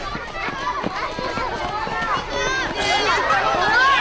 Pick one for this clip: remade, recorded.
recorded